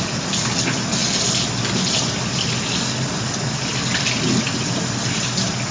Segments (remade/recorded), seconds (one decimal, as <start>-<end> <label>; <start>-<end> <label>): 0.0-5.7 recorded